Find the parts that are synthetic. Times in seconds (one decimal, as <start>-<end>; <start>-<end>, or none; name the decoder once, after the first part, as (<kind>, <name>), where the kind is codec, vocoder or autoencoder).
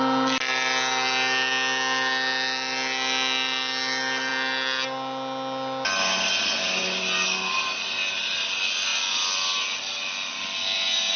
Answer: none